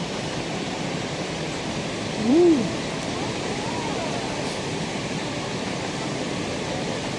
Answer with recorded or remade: remade